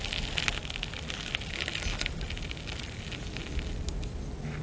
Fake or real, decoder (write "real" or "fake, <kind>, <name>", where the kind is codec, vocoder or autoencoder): real